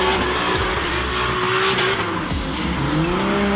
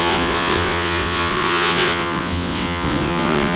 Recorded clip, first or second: first